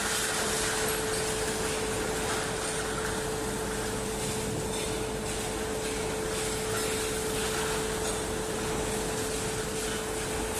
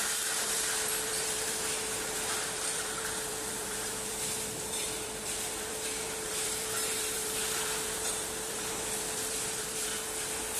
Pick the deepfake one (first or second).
second